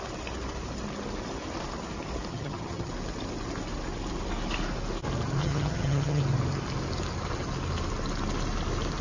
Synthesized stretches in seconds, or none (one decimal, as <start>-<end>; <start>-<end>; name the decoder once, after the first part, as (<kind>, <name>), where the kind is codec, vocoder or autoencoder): 2.3-2.9 (vocoder, HiFi-GAN); 5.4-6.2